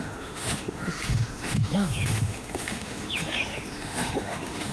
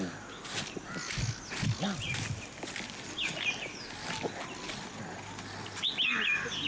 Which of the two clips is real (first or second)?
second